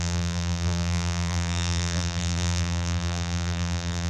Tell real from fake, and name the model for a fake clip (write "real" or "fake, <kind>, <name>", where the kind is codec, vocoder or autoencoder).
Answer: fake, vocoder, BigVGAN v2